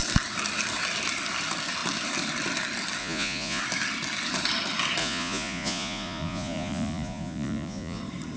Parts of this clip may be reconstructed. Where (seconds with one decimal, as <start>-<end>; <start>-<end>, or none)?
3.0-3.6; 5.0-8.0

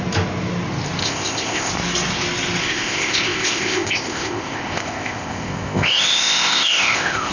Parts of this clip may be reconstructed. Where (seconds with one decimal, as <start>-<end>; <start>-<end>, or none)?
1.0-1.7; 2.6-7.3

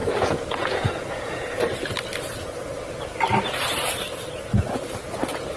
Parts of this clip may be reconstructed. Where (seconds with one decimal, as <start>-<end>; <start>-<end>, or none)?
0.0-1.6

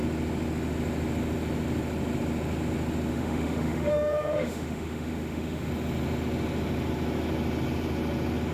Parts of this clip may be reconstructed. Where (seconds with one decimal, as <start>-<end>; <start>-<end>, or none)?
3.1-5.7